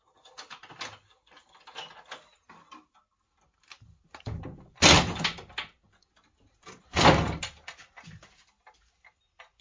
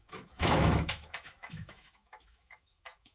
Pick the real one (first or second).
first